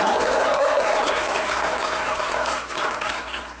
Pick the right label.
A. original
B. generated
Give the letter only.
B